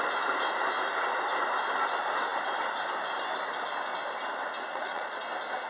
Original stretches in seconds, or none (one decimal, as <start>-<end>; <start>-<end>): 0.0-4.7; 5.2-5.7